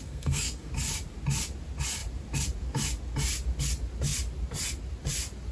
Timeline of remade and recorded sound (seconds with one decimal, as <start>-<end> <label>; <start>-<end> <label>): 0.0-0.7 remade; 0.7-5.5 recorded